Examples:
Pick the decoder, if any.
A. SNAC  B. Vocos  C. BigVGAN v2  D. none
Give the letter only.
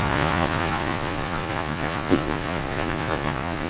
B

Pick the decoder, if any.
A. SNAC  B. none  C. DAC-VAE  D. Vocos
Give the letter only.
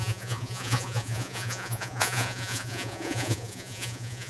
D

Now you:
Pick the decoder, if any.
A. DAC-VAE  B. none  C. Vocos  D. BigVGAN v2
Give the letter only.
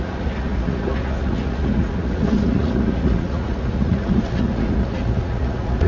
C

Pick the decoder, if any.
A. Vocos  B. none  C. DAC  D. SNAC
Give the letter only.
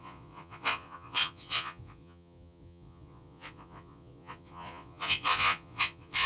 A